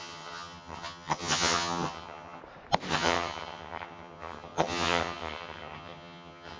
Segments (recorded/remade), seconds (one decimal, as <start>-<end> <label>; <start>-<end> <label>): 0.0-2.4 remade; 2.4-2.9 recorded; 2.9-6.6 remade